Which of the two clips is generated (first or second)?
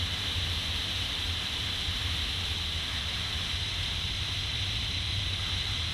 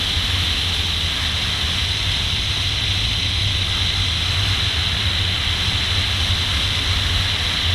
first